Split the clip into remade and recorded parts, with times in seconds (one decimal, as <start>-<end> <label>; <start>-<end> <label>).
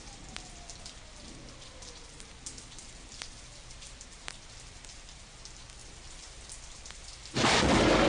0.0-8.1 recorded